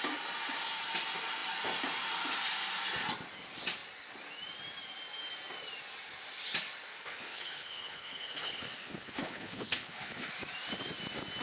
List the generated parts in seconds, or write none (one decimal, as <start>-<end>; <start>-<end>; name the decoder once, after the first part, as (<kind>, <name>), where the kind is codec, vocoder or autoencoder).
6.9-10.3 (codec, HILCodec)

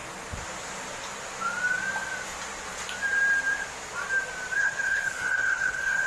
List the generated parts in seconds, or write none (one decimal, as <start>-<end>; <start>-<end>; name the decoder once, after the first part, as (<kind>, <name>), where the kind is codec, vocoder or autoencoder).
4.6-6.1 (codec, HILCodec)

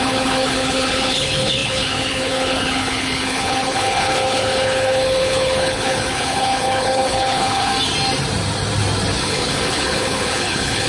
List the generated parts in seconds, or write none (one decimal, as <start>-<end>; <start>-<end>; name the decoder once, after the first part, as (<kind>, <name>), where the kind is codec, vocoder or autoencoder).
0.0-7.7 (codec, HILCodec); 9.2-10.9

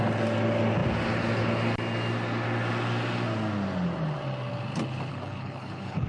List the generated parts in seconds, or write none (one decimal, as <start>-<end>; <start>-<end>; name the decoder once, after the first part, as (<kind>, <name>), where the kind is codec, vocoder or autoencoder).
5.1-6.1 (codec, HILCodec)

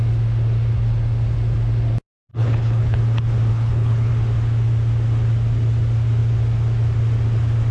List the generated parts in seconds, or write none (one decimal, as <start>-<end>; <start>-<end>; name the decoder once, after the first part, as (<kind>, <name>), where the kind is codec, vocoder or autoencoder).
2.3-3.0 (codec, HILCodec); 3.5-4.1

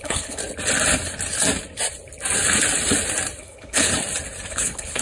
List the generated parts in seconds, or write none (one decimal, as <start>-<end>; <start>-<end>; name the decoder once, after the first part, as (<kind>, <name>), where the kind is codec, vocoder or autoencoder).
0.0-0.4 (codec, HILCodec); 3.4-3.9; 4.5-5.0